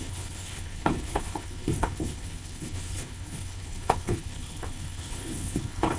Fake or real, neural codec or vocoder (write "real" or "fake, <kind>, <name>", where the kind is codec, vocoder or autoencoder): fake, codec, HILCodec